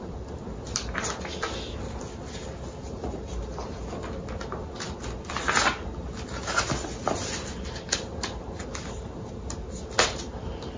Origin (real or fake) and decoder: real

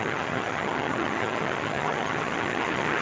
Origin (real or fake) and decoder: fake, vocoder, HiFi-GAN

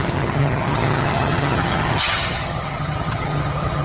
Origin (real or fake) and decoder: fake, vocoder, HiFi-GAN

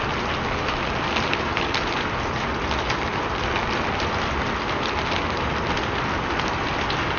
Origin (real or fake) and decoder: real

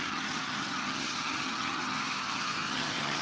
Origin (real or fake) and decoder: fake, vocoder, HiFi-GAN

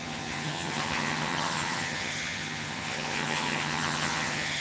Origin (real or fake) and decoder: fake, vocoder, HiFi-GAN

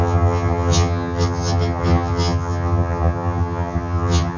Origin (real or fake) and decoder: fake, vocoder, HiFi-GAN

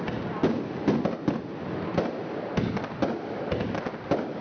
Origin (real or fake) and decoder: real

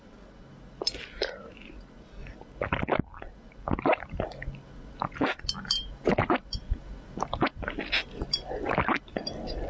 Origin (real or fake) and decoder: real